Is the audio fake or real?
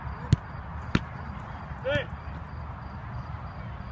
real